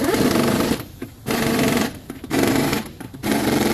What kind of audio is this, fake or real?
fake